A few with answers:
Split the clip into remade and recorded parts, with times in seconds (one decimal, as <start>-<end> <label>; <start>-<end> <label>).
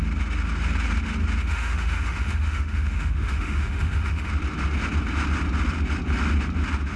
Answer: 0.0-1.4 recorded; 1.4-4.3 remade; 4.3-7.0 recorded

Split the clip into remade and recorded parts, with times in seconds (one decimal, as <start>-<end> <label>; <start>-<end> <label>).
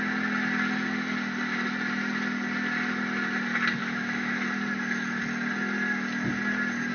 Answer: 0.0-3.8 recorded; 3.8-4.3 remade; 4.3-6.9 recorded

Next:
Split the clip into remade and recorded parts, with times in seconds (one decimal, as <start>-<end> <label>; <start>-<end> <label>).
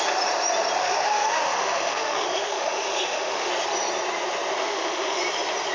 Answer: 0.0-0.8 recorded; 0.8-3.5 remade; 3.5-4.6 recorded; 4.6-5.2 remade; 5.2-5.7 recorded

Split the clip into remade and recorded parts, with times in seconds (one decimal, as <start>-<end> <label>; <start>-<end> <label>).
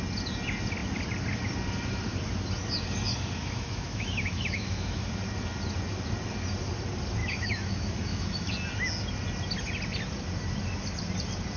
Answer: 0.0-3.4 recorded; 3.4-5.1 remade; 5.1-7.2 recorded; 7.2-8.5 remade; 8.5-11.6 recorded